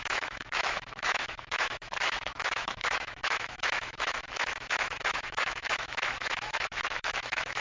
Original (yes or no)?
no